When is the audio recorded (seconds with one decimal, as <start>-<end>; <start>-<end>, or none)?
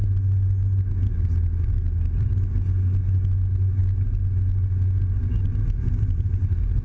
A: 0.0-6.8